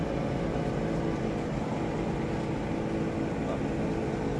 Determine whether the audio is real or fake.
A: real